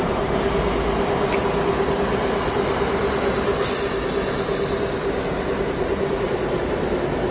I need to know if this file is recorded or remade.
recorded